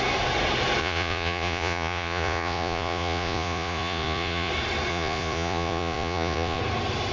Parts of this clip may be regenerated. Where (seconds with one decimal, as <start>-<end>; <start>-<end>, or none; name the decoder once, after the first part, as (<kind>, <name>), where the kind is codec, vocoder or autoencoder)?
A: 0.8-4.5 (vocoder, Vocos); 4.9-6.6